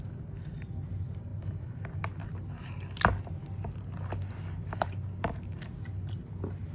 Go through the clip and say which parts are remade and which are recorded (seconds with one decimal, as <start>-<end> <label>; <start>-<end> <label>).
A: 0.0-6.7 recorded